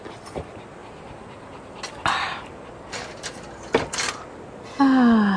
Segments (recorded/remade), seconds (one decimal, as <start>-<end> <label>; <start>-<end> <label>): 0.0-5.4 recorded